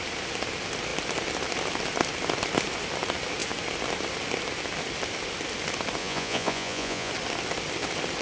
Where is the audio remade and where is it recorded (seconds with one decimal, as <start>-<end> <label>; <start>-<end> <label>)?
0.0-6.0 recorded; 6.0-7.1 remade; 7.1-8.2 recorded